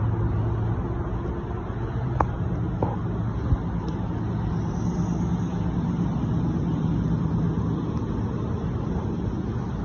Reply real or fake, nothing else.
real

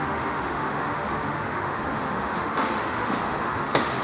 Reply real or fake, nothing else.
fake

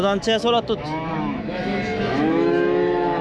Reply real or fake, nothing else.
fake